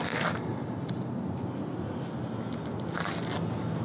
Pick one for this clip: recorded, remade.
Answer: recorded